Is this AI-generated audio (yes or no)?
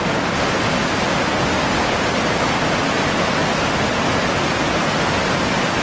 no